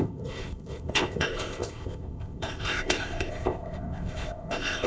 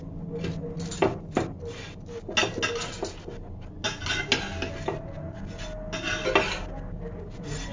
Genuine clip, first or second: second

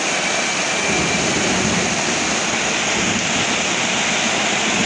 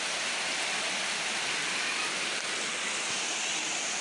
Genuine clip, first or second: first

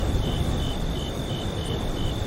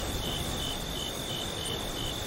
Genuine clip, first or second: second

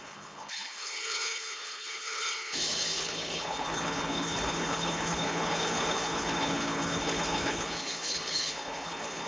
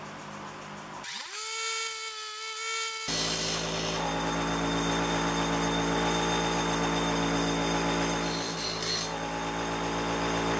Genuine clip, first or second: second